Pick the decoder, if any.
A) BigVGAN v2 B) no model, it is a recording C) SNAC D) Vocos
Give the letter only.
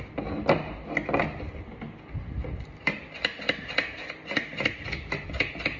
B